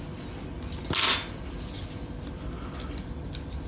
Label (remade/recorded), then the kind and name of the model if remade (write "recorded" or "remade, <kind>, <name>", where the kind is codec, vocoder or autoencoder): recorded